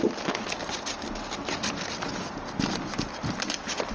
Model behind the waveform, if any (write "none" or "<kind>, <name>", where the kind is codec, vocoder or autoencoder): none